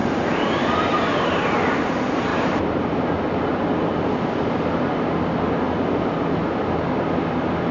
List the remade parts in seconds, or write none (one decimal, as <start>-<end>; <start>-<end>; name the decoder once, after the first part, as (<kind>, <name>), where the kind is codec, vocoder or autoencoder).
0.0-0.9 (vocoder, BigVGAN v2); 2.3-3.0